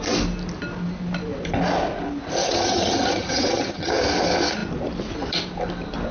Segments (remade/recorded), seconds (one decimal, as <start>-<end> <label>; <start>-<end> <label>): 0.0-2.4 recorded; 2.4-4.0 remade; 4.0-6.1 recorded